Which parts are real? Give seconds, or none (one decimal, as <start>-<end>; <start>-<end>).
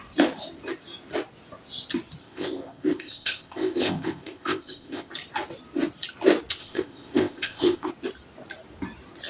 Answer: 0.0-2.2; 5.1-6.6; 7.9-9.3